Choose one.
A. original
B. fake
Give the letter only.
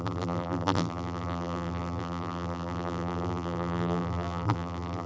B